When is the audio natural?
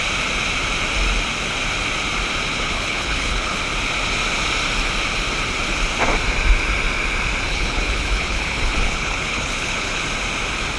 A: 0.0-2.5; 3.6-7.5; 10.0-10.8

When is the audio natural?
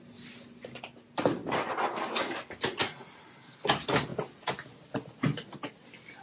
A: 0.0-6.2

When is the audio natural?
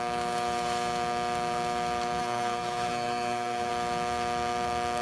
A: 0.0-2.2; 3.7-5.0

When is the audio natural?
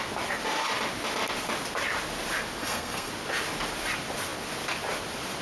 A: 0.0-2.6; 3.1-5.4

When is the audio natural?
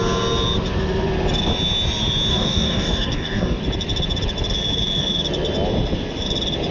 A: 0.0-2.3; 3.6-6.7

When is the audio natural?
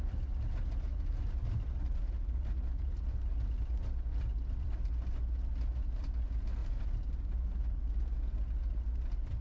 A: 0.0-0.9; 3.0-6.6; 8.0-9.4